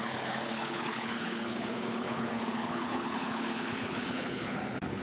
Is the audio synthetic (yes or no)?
yes